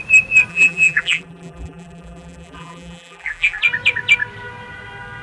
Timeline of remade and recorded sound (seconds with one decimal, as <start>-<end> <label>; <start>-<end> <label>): 0.0-0.5 recorded; 0.5-3.6 remade; 3.6-5.2 recorded